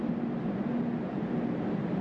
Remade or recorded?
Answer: recorded